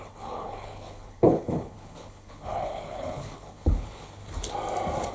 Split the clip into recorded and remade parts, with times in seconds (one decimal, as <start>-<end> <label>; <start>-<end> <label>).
0.0-4.2 remade; 4.2-5.1 recorded